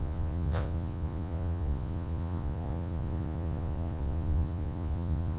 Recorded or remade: remade